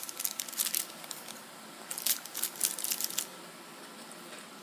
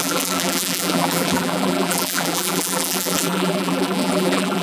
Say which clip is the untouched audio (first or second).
first